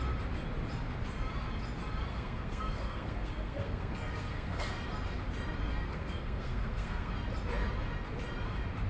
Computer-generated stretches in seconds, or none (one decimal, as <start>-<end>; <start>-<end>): 2.1-4.7; 5.7-7.1